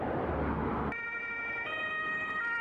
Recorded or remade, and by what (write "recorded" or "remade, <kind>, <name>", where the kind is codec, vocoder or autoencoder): recorded